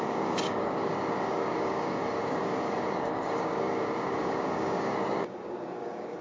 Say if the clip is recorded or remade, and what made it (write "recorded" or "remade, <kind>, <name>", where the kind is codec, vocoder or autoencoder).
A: remade, codec, DAC